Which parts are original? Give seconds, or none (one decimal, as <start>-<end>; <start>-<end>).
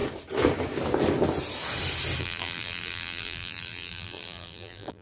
0.0-2.2